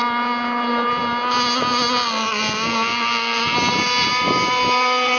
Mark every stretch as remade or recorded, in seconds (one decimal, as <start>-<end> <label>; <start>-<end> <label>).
0.0-5.2 recorded